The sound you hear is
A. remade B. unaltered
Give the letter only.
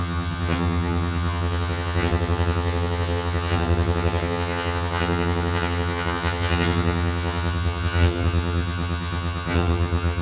A